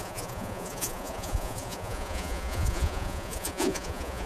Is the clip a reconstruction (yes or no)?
yes